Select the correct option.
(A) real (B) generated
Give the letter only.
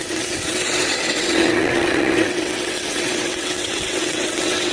B